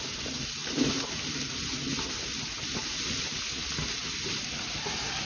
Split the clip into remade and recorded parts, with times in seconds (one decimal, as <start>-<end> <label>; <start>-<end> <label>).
0.0-5.3 recorded